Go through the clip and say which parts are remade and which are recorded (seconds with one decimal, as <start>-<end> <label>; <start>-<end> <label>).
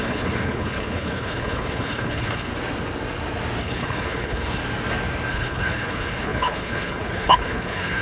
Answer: 0.0-2.5 remade; 2.5-3.6 recorded; 3.6-4.6 remade; 4.6-5.3 recorded; 5.3-8.0 remade